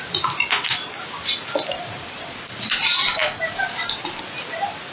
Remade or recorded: remade